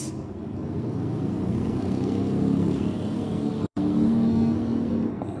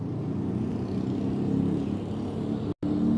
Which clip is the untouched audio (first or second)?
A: second